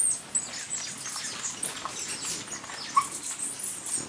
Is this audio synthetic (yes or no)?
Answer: no